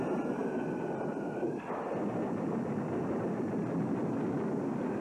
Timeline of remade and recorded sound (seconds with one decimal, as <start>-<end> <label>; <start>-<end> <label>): 0.0-0.4 recorded; 0.4-1.9 remade; 1.9-5.0 recorded